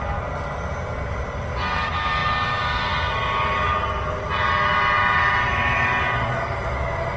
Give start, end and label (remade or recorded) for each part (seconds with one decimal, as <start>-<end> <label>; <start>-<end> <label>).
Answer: 0.0-7.2 recorded